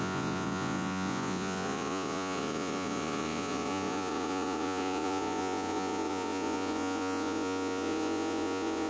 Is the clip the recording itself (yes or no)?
no